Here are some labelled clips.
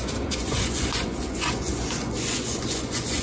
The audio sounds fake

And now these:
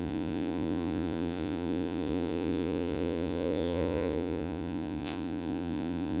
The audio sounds fake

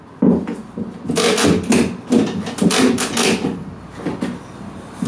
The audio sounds real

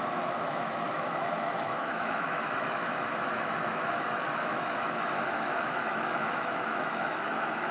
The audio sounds fake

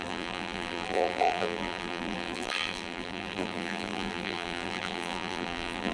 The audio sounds fake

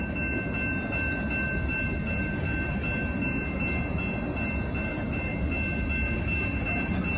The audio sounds real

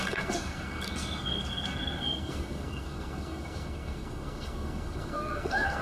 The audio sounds fake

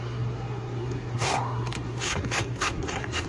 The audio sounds fake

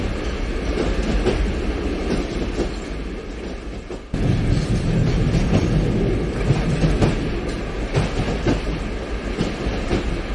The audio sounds real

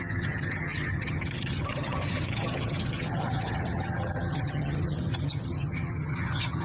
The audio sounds fake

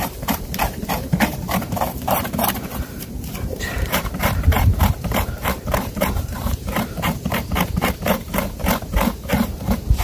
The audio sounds fake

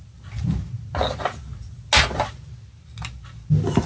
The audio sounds real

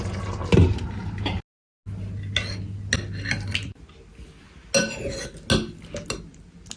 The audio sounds real